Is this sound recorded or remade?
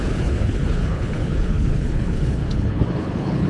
remade